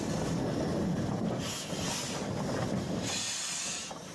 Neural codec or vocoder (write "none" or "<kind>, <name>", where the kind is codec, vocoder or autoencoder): none